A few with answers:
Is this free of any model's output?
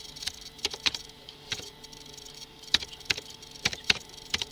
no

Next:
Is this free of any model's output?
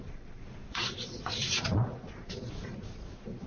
no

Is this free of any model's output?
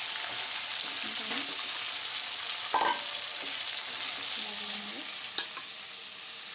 yes